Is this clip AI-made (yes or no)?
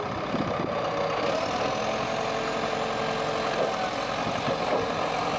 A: no